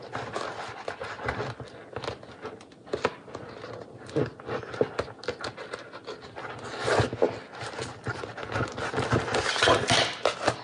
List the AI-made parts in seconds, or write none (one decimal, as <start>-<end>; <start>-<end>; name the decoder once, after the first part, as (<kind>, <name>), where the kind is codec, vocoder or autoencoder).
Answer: none